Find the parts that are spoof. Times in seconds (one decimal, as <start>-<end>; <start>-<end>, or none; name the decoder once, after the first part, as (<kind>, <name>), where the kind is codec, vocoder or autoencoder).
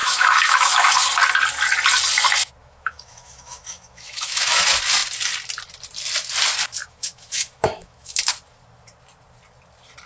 0.0-0.9 (autoencoder, DAC-VAE); 2.6-4.6; 6.8-8.3